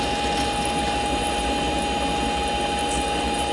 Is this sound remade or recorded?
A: recorded